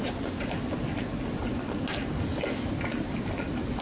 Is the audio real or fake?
real